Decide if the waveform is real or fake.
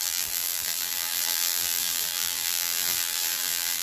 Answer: fake